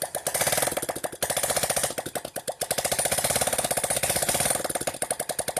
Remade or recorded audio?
recorded